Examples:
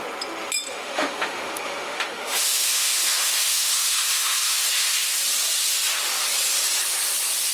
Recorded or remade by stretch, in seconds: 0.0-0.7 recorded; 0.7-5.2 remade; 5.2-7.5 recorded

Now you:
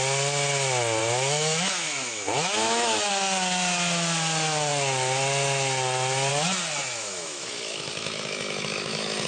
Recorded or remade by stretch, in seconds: 0.0-1.0 recorded; 1.0-3.1 remade; 3.1-6.8 recorded; 6.8-9.3 remade

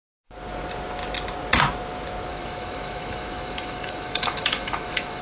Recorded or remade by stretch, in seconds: 0.0-2.3 recorded; 2.3-5.2 remade